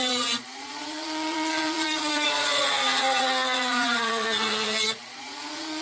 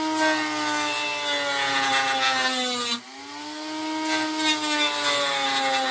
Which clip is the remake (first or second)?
first